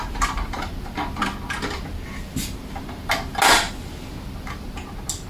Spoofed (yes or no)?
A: no